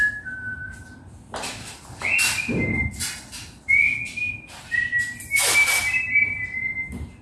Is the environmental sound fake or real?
real